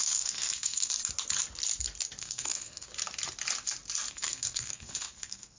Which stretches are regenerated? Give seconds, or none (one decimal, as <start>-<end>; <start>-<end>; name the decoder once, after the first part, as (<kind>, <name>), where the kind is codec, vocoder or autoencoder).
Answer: 0.0-0.9 (codec, SNAC); 2.2-2.9; 4.1-5.6